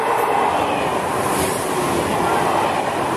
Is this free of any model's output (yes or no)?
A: yes